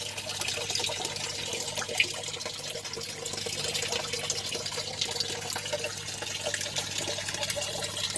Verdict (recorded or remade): recorded